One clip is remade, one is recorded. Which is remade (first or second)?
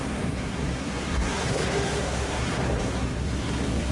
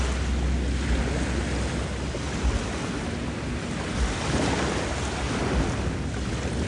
first